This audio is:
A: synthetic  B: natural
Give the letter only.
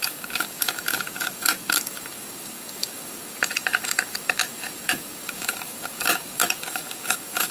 A